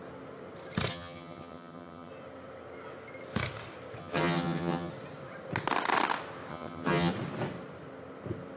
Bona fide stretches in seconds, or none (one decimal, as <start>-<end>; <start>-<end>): 0.0-0.9; 2.1-4.0; 4.9-6.5; 7.1-8.6